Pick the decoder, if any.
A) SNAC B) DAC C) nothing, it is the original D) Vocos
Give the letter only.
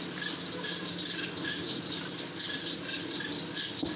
C